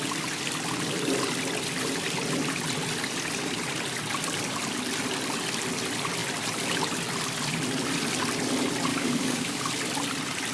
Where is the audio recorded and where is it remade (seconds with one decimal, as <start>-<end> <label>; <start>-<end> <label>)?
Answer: 0.0-8.9 recorded; 8.9-9.6 remade; 9.6-10.5 recorded